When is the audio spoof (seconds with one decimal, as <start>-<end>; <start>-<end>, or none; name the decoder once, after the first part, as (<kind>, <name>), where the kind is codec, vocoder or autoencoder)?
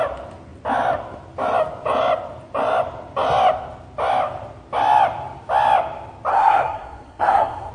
6.3-7.7 (codec, SNAC)